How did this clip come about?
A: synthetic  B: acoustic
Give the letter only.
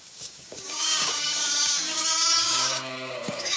A